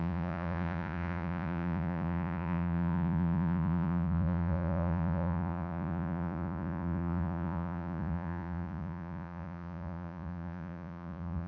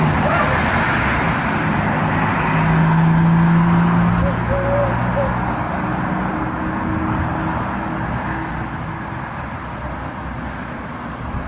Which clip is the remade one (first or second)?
first